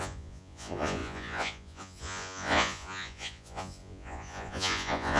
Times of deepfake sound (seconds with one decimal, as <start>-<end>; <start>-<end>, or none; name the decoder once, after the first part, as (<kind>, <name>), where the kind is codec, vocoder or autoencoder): 0.0-5.2 (vocoder, Vocos)